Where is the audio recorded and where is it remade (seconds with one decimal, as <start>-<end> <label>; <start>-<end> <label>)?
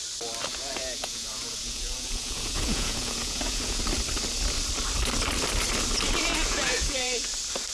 0.0-0.5 recorded; 0.5-3.8 remade; 3.8-6.3 recorded; 6.3-7.3 remade; 7.3-7.7 recorded